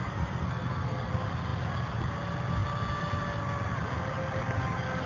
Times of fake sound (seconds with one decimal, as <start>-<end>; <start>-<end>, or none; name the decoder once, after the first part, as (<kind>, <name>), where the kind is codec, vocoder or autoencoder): 0.0-1.1 (codec, SNAC)